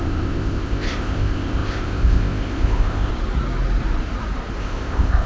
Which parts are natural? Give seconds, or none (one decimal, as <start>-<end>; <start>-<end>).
3.1-4.6